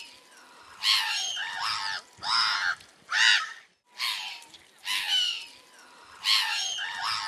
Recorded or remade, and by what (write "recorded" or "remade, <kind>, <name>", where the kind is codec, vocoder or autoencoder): recorded